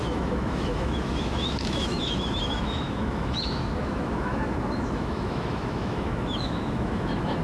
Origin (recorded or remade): remade